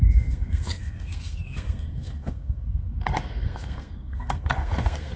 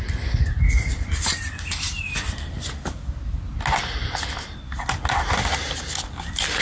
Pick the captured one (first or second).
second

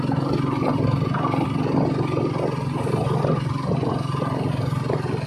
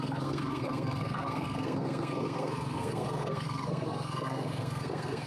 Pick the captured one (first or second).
first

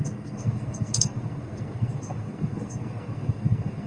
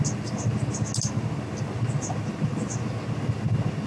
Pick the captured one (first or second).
second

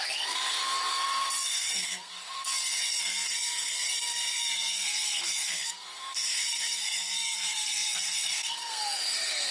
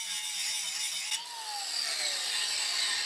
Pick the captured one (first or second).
second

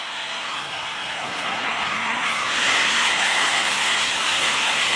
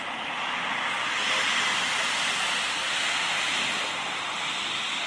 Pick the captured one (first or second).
second